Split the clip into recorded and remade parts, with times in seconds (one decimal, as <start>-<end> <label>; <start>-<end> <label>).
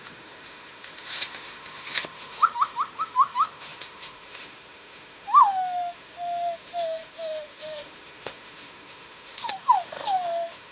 0.0-10.7 remade